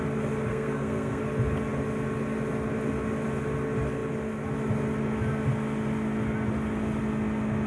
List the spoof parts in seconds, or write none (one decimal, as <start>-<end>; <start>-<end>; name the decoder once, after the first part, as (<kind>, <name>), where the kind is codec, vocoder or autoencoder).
0.5-1.2 (codec, SNAC)